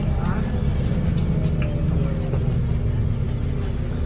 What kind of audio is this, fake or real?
real